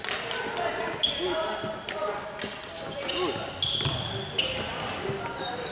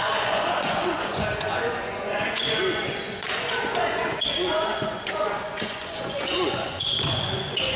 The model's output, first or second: second